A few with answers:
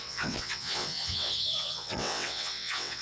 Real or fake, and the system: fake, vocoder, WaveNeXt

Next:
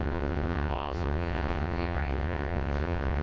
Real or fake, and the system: fake, vocoder, WaveNeXt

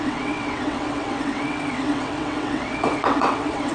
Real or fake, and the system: fake, vocoder, WaveNeXt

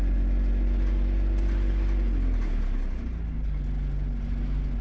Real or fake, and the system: real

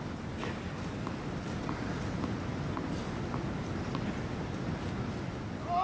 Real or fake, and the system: real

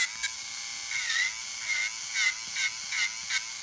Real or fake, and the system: real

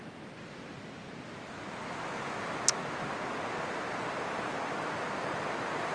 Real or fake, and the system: real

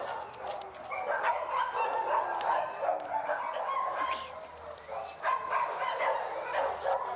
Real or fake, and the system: real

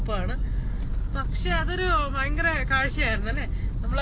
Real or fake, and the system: real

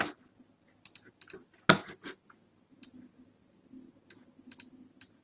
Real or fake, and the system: real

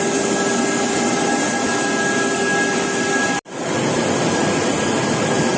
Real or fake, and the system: real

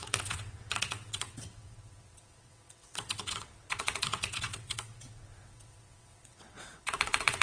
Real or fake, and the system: fake, vocoder, WaveNeXt